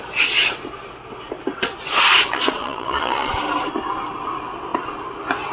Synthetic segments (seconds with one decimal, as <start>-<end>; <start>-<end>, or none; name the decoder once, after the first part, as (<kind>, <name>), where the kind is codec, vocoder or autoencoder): 2.3-3.3 (vocoder, Vocos)